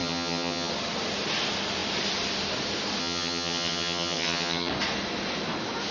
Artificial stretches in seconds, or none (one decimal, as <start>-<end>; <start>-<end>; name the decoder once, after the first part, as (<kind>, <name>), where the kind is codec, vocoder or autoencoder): 0.0-0.7 (vocoder, HiFi-GAN); 3.0-4.7